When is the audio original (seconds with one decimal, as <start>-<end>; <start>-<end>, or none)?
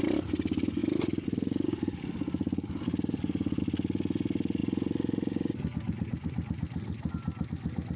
0.0-8.0